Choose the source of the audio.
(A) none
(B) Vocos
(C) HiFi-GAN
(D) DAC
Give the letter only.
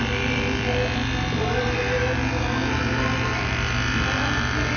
A